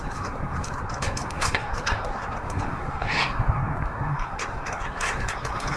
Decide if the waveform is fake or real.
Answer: fake